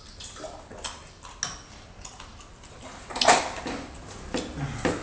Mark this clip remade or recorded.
recorded